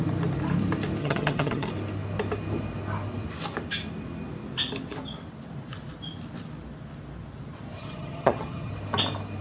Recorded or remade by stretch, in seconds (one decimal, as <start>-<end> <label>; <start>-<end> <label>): 0.0-1.0 recorded; 1.0-1.7 remade; 1.7-7.8 recorded; 7.8-8.7 remade; 8.7-9.4 recorded